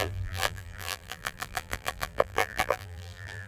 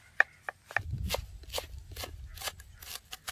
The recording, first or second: second